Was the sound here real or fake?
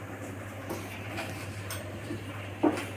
fake